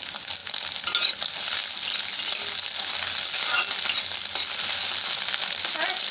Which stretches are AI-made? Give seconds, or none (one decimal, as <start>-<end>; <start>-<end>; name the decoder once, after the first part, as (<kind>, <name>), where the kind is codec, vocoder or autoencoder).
none